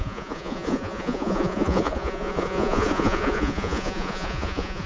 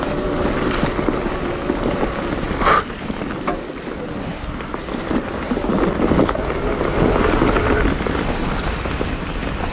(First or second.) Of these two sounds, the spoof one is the first